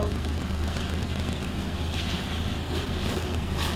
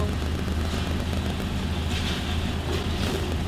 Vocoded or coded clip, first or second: first